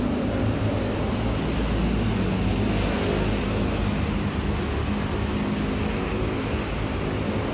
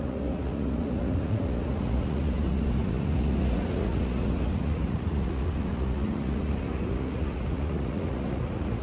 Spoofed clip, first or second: second